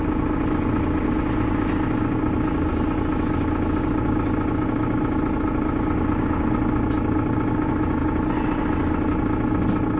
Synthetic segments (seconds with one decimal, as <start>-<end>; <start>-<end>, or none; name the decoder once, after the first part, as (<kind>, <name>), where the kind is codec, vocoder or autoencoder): none